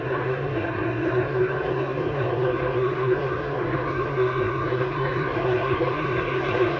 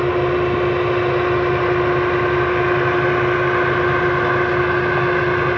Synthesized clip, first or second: first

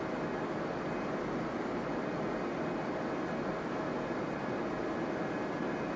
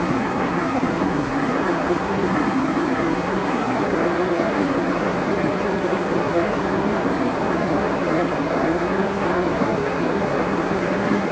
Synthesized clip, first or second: second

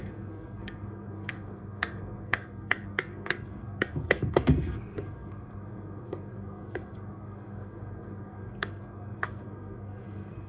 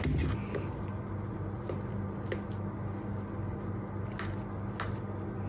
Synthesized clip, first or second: first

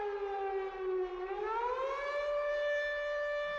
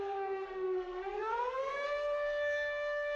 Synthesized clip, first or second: second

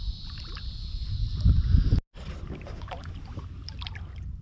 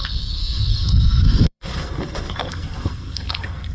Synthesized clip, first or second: second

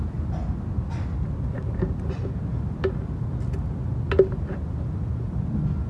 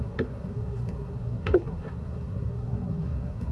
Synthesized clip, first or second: second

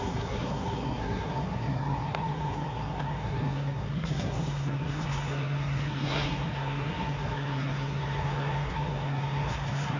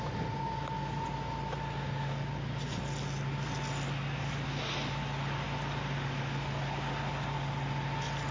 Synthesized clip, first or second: first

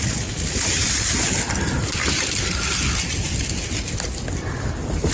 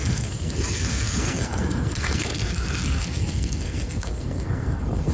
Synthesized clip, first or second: second